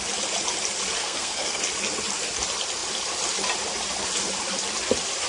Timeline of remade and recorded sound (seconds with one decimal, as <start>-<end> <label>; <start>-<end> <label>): 0.0-1.0 recorded; 1.0-1.6 remade; 1.6-5.3 recorded